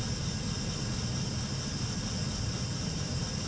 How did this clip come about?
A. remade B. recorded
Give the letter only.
B